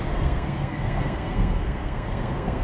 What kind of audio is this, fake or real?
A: fake